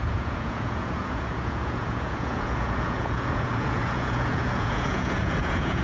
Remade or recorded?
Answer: remade